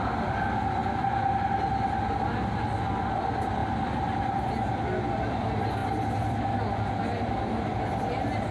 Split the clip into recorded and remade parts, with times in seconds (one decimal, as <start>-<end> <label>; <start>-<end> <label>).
0.0-8.5 recorded